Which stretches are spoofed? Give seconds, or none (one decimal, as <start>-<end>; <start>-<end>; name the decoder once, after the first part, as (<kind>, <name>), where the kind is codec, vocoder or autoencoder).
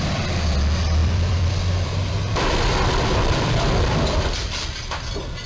0.0-5.5 (vocoder, BigVGAN v2)